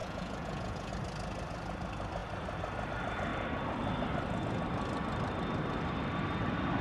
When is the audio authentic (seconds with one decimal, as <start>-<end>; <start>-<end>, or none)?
0.9-6.8